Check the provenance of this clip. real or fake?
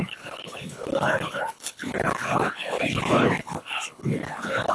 fake